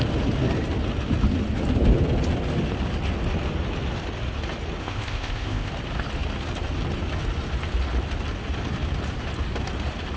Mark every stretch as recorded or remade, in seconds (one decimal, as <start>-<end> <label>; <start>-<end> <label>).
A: 0.0-4.8 recorded; 4.8-5.7 remade; 5.7-10.2 recorded

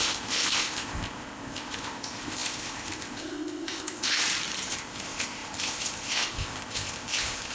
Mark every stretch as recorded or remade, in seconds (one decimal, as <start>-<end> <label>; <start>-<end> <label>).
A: 0.0-4.2 remade; 4.2-4.7 recorded; 4.7-7.5 remade